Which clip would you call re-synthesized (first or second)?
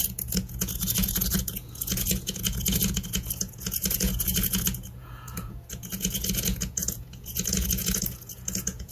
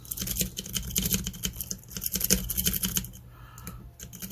first